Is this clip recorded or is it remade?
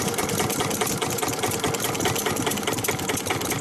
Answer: recorded